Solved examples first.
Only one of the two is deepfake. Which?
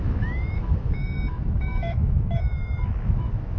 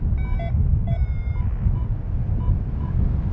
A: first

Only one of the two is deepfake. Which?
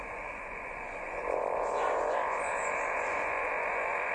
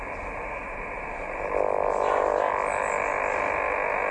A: first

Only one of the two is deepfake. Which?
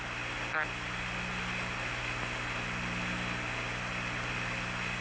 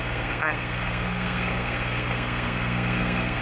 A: second